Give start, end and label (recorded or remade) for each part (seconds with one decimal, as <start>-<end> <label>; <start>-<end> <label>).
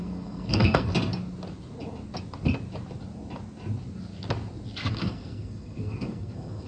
0.0-0.9 remade; 0.9-4.9 recorded; 4.9-6.7 remade